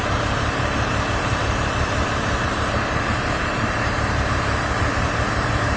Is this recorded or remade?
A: remade